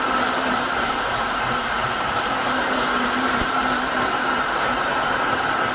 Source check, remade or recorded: remade